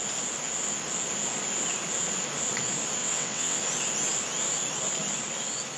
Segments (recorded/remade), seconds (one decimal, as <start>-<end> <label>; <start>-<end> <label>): 0.0-3.0 recorded; 3.0-3.6 remade; 3.6-5.8 recorded